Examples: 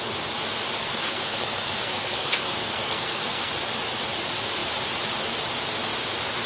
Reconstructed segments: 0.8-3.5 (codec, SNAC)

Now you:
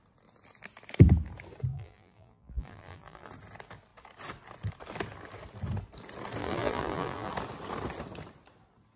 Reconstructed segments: 1.7-3.3 (vocoder, BigVGAN v2); 6.4-7.3

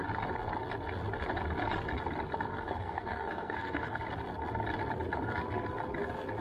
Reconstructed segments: 2.5-4.0 (codec, SNAC)

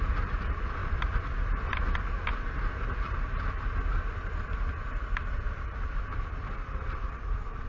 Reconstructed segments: none

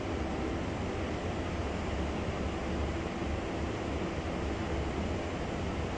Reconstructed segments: none